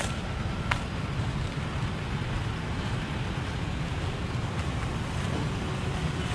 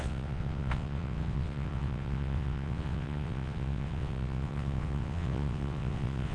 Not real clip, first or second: second